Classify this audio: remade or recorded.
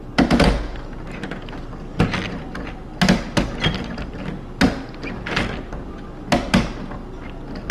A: recorded